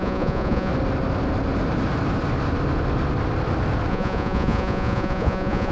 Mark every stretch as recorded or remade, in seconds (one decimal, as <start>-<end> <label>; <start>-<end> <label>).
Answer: 0.0-0.7 remade; 0.7-3.9 recorded; 3.9-5.7 remade